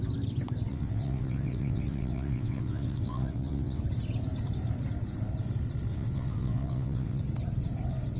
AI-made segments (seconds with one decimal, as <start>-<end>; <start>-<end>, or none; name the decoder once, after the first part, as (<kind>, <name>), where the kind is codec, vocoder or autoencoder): 0.7-3.8 (vocoder, WaveNeXt); 5.9-7.2